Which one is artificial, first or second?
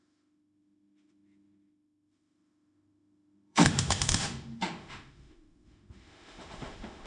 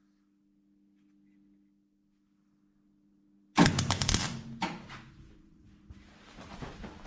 first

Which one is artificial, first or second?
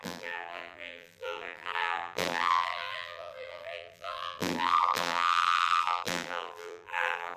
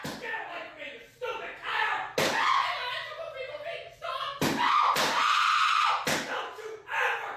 first